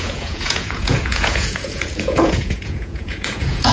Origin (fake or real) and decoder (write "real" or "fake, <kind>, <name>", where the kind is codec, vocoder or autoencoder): fake, vocoder, Vocos